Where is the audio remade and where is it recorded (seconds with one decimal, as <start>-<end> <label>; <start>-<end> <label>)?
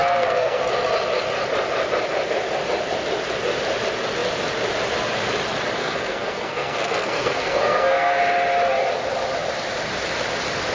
0.0-0.6 remade; 0.6-5.8 recorded; 5.8-8.2 remade; 8.2-10.7 recorded